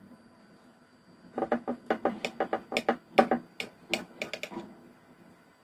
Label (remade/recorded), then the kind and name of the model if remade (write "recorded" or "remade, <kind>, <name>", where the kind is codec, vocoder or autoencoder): recorded